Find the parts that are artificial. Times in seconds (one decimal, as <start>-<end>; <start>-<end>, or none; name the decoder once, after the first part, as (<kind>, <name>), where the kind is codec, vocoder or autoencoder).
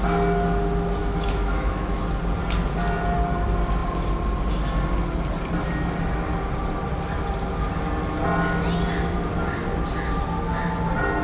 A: 1.0-2.0 (autoencoder, DAC-VAE)